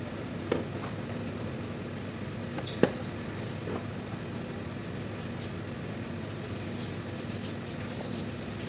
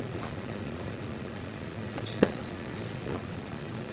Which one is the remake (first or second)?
second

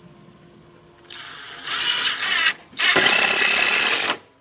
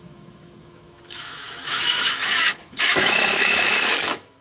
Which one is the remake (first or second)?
second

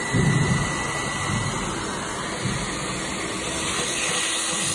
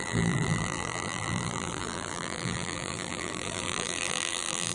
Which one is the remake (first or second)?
second